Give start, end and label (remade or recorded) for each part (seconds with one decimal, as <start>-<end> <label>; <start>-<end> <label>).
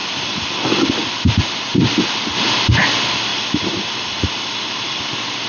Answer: 0.0-0.9 remade; 0.9-3.3 recorded; 3.3-5.1 remade; 5.1-5.5 recorded